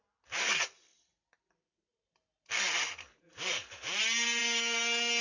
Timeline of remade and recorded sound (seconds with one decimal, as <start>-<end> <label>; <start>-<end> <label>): 0.0-0.9 recorded; 0.9-4.0 remade; 4.0-5.2 recorded